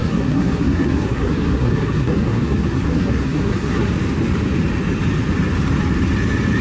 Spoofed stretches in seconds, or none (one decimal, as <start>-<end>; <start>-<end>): 0.0-3.9